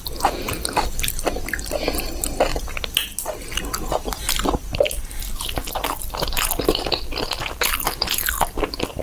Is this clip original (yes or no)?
yes